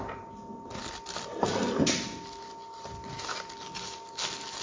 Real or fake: real